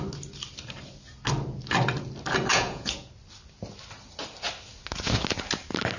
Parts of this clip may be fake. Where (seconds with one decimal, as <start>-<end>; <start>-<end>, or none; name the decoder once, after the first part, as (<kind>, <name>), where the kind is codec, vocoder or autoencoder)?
2.5-3.1 (vocoder, Vocos)